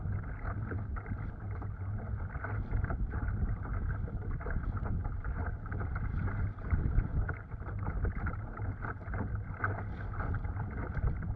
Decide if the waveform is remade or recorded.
recorded